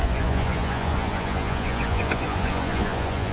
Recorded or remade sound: remade